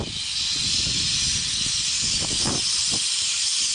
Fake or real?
real